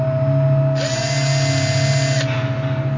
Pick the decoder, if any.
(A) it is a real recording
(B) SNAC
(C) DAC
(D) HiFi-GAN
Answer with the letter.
A